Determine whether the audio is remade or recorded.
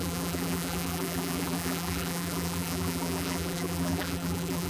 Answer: remade